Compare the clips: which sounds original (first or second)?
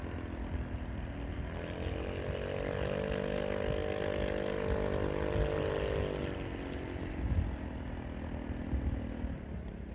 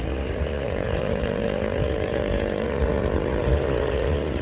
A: first